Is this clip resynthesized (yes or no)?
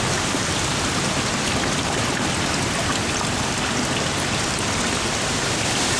no